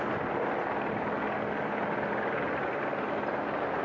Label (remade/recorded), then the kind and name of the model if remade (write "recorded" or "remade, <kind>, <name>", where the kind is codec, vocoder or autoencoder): recorded